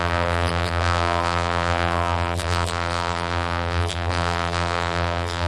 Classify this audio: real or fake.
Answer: fake